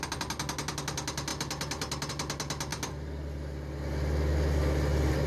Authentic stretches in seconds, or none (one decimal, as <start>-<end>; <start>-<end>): 0.0-5.3